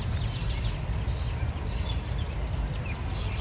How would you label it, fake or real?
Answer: real